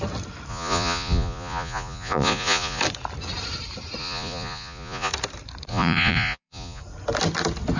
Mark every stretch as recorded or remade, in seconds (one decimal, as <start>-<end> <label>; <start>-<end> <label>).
0.0-0.5 recorded; 0.5-2.8 remade; 2.8-4.0 recorded; 4.0-5.1 remade; 5.1-5.7 recorded; 5.7-6.8 remade; 6.8-7.8 recorded